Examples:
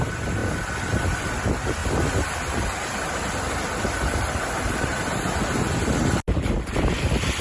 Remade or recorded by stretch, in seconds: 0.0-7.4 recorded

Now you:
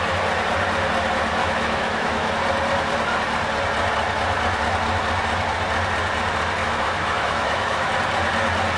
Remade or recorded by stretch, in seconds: 0.0-1.4 recorded; 1.4-2.3 remade; 2.3-6.6 recorded; 6.6-7.9 remade; 7.9-8.8 recorded

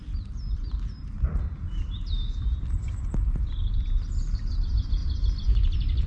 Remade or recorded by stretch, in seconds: 0.0-6.1 recorded

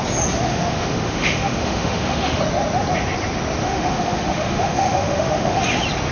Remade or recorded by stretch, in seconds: 0.0-0.5 recorded; 0.5-2.4 remade; 2.4-3.6 recorded; 3.6-5.6 remade; 5.6-6.1 recorded

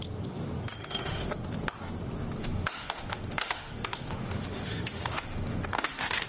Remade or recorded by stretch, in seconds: 0.0-0.8 recorded; 0.8-1.3 remade; 1.3-2.4 recorded; 2.4-6.3 remade